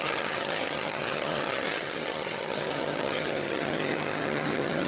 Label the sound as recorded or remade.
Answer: remade